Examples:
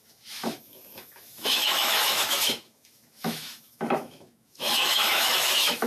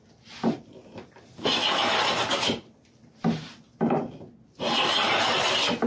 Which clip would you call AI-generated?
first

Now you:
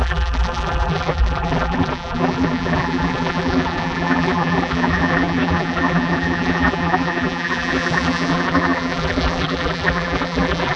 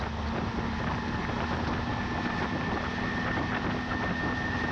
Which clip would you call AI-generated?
first